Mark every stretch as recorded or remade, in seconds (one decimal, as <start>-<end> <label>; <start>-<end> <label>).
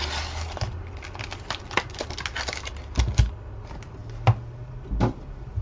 0.0-5.6 recorded